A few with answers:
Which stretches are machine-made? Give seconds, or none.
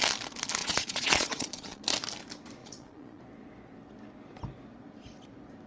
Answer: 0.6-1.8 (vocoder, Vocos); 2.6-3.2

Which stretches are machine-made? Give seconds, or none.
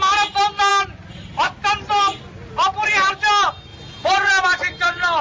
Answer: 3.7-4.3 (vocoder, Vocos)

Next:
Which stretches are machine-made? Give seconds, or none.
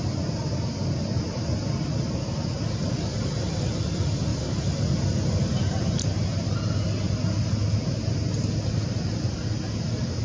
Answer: none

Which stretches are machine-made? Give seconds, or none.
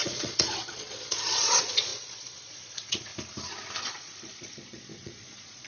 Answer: 0.0-3.1 (vocoder, Vocos); 3.8-5.7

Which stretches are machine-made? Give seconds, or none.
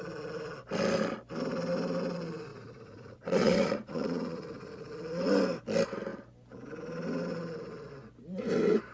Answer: 2.5-4.9 (vocoder, Vocos)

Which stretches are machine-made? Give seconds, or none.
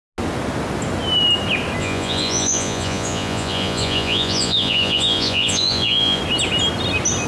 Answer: 1.8-6.2 (vocoder, Vocos)